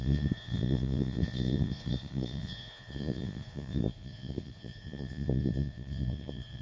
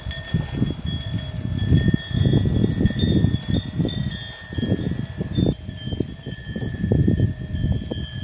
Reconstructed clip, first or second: first